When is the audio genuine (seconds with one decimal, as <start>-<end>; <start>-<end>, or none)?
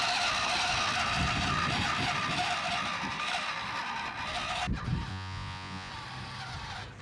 0.0-5.1; 5.9-7.0